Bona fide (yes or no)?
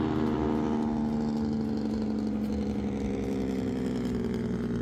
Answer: yes